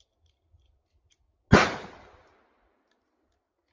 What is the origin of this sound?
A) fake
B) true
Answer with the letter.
B